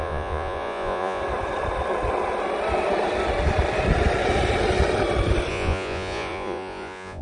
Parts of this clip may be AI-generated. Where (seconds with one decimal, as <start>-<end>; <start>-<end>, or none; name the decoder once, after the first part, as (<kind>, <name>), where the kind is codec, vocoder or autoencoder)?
0.0-1.2 (vocoder, Vocos); 5.5-7.2